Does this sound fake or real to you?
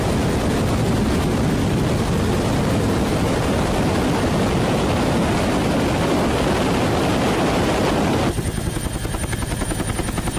real